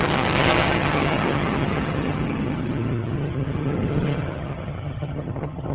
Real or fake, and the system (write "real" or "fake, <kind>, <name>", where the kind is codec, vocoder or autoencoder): fake, vocoder, HiFi-GAN